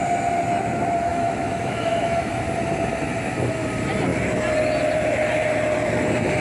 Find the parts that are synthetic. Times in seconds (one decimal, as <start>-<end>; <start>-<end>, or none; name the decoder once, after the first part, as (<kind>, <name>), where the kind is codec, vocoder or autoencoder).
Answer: 1.1-2.3 (autoencoder, DAC-VAE)